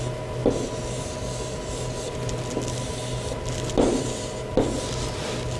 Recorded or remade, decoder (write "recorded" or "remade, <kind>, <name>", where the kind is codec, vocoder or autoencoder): recorded